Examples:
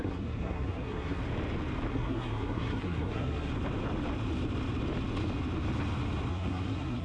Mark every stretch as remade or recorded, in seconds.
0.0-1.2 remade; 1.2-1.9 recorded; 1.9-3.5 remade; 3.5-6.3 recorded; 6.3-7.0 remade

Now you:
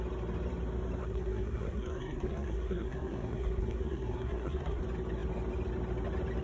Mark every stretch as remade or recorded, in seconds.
0.0-1.0 recorded; 1.0-4.8 remade; 4.8-6.4 recorded

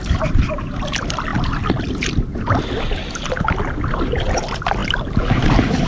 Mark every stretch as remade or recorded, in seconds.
0.0-5.9 recorded

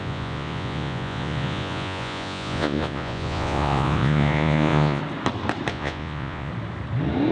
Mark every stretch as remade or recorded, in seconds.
0.0-5.0 remade; 5.0-5.7 recorded; 5.7-6.5 remade; 6.5-7.3 recorded

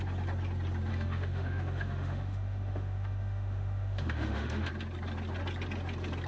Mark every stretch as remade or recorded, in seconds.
0.0-0.9 recorded; 0.9-4.7 remade; 4.7-6.3 recorded

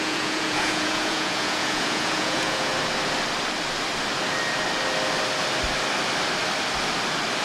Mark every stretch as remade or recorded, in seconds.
0.0-2.7 remade; 2.7-7.4 recorded